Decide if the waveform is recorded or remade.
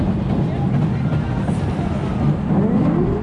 recorded